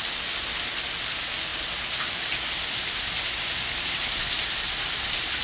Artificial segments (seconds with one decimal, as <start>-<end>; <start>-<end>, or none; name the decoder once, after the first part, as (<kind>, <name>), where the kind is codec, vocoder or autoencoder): none